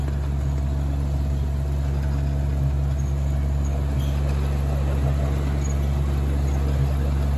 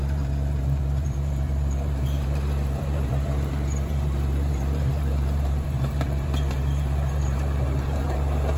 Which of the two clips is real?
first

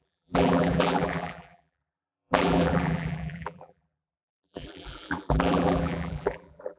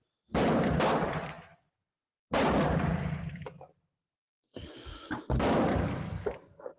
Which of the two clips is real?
second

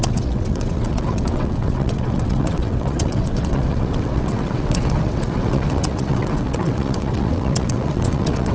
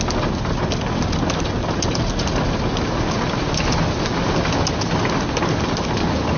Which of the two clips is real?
second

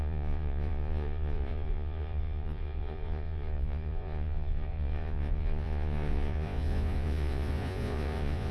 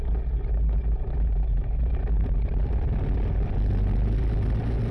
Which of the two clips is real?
second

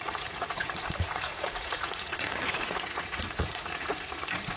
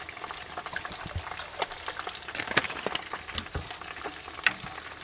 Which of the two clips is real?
second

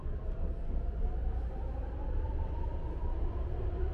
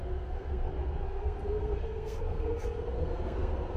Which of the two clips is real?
first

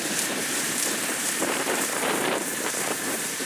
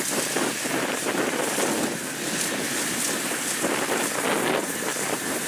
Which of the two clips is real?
second